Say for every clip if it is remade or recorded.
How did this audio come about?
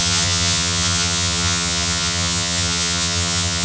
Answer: remade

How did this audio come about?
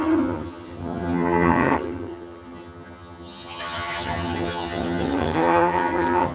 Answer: remade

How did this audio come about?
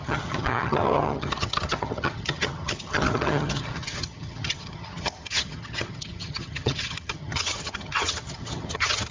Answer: remade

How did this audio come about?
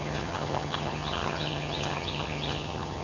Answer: remade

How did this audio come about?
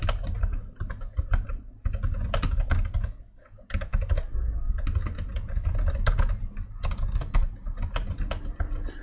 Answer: recorded